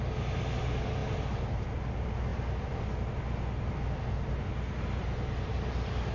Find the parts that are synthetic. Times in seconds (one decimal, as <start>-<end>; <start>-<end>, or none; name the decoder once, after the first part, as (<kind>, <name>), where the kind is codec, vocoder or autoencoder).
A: none